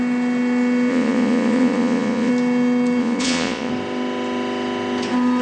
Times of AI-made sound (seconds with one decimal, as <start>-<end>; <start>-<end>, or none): 0.9-2.3; 3.0-3.7

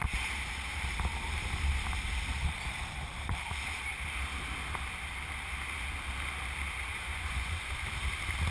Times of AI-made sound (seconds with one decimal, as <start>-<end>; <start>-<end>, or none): 6.9-7.7

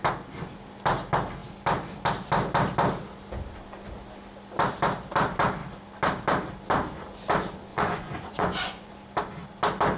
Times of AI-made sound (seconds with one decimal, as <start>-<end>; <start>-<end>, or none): 7.7-8.9

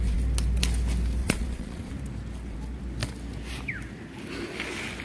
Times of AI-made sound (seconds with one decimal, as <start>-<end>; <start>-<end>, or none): 1.2-1.9